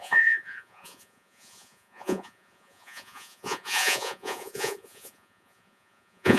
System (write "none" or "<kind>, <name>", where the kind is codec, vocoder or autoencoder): vocoder, Vocos